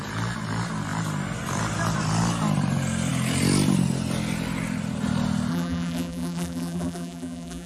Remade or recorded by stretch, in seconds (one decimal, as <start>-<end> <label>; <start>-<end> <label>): 0.0-5.5 recorded; 5.5-7.7 remade